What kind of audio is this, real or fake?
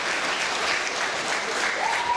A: fake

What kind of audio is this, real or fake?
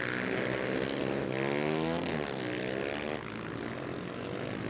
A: real